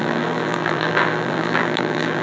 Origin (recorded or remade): remade